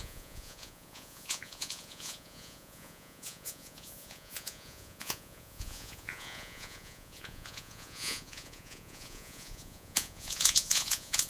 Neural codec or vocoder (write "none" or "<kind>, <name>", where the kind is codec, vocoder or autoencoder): vocoder, Vocos